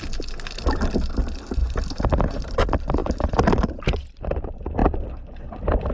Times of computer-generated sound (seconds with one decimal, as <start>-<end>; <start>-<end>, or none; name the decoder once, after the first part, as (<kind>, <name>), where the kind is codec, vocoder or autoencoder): 1.6-2.5 (vocoder, BigVGAN v2); 3.0-4.3